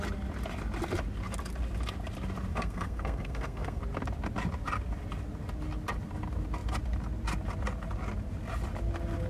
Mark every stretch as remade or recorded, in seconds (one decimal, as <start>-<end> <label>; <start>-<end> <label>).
0.0-2.5 recorded; 2.5-3.8 remade; 3.8-9.3 recorded